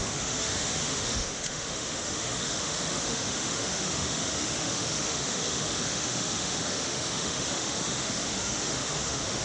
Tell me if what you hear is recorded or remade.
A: remade